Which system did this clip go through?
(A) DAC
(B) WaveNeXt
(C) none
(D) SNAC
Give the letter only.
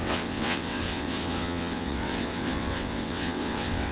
B